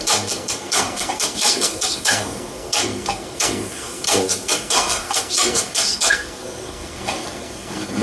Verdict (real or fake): fake